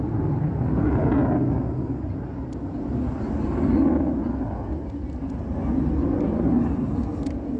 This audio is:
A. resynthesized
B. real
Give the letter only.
B